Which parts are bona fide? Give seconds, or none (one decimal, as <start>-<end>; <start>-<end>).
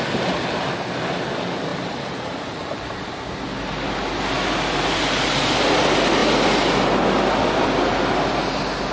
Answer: 0.0-1.7; 2.9-8.9